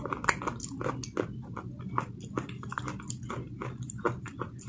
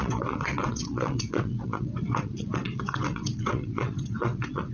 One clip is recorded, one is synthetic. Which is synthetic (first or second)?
second